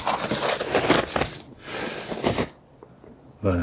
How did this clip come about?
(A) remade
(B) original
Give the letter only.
B